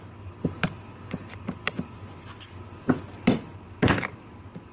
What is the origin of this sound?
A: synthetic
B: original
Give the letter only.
B